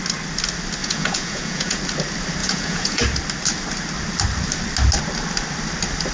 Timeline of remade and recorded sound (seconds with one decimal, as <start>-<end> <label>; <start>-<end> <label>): 0.0-0.8 recorded; 0.8-1.8 remade; 1.8-2.4 recorded; 2.4-3.0 remade; 3.0-6.1 recorded